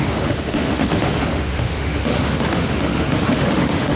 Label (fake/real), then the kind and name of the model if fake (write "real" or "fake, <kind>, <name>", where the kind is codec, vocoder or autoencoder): fake, autoencoder, DAC-VAE